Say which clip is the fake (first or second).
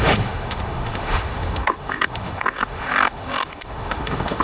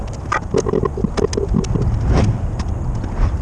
first